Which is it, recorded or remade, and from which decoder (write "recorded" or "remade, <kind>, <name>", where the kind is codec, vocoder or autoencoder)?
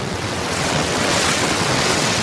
remade, vocoder, WaveNeXt